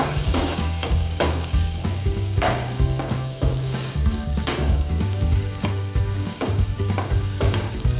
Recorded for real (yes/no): no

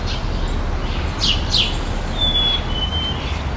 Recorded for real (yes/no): yes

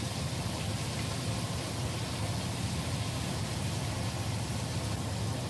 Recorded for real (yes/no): yes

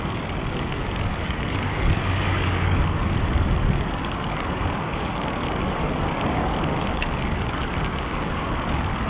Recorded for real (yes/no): no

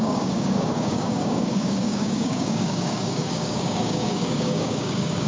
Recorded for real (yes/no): no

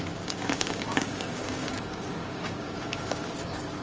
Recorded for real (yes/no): no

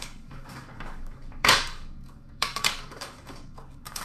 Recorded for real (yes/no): no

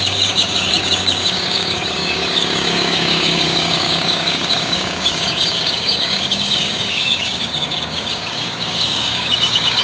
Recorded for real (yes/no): no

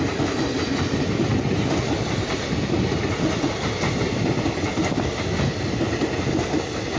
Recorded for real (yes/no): yes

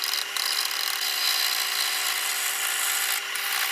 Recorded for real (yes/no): yes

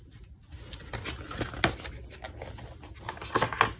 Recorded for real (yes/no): yes